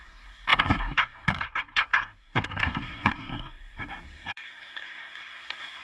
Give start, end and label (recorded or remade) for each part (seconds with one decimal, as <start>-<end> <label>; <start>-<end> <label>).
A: 0.0-5.8 remade